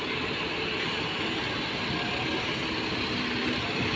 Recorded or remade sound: recorded